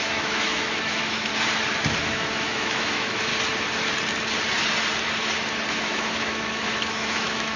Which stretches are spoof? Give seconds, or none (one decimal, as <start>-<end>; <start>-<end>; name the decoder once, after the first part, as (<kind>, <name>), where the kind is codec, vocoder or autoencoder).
0.0-1.3 (autoencoder, DAC-VAE); 2.0-3.3; 5.7-7.6